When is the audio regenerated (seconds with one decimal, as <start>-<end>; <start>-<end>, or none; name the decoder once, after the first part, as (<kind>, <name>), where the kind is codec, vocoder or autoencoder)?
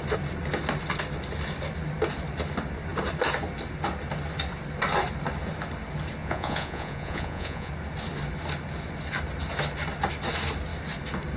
6.2-7.7 (vocoder, Vocos)